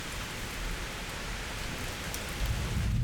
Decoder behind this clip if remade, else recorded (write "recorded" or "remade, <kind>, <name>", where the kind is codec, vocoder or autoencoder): recorded